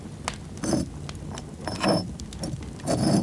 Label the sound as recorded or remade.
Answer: recorded